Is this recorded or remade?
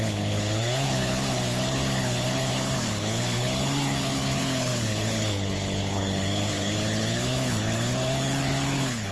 remade